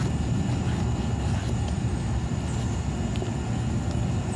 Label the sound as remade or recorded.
recorded